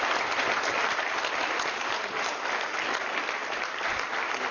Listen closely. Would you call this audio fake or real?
real